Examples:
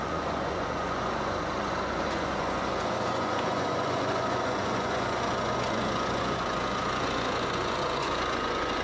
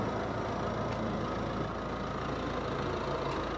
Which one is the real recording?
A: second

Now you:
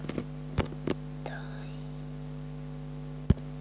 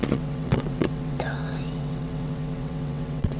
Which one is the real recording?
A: first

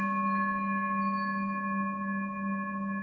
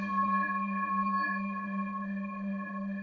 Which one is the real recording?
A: first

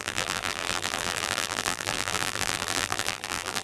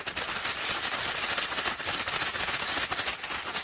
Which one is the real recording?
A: second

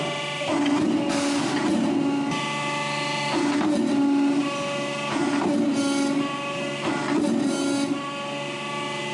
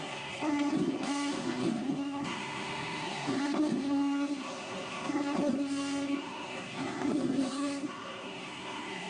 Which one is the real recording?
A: first